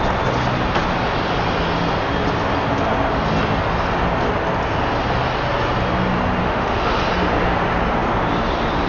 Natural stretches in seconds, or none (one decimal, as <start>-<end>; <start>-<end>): 0.0-6.4; 7.0-8.9